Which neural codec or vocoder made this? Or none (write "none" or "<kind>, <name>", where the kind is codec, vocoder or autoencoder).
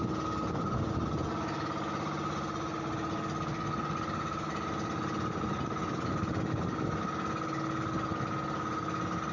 none